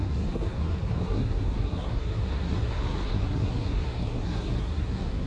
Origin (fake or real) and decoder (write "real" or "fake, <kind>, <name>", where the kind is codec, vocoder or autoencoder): fake, codec, SNAC